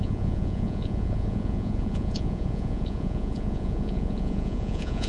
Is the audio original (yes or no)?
no